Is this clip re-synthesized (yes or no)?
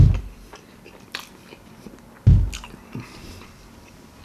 no